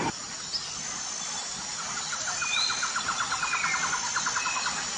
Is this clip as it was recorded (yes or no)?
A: yes